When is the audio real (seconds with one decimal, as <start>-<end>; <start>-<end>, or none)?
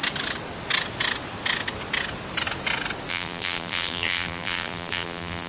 0.0-3.1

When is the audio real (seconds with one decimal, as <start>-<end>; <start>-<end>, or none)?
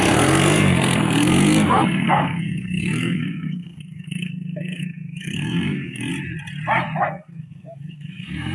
6.1-7.0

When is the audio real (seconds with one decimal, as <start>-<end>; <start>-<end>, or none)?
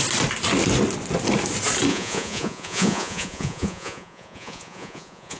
0.0-1.9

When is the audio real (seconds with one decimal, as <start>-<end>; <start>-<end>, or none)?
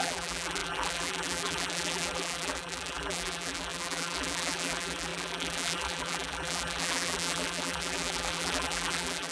none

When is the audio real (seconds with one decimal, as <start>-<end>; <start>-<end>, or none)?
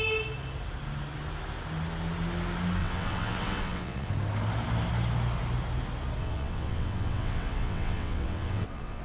0.0-2.8; 4.1-6.2